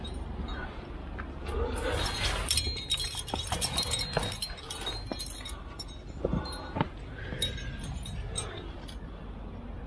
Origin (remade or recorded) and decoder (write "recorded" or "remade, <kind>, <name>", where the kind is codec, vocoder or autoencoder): recorded